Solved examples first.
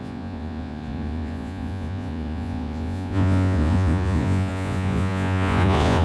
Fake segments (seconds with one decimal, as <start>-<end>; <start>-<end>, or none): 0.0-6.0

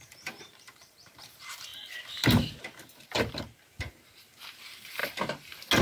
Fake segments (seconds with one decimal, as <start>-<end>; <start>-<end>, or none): 0.0-1.7; 4.4-5.0

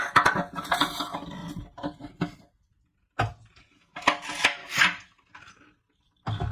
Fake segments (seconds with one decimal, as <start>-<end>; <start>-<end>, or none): 1.4-2.4

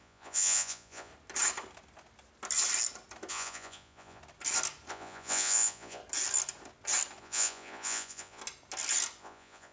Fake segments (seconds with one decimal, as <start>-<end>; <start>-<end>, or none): 0.0-1.1; 3.3-4.2; 4.9-6.0; 7.2-8.4; 9.2-9.7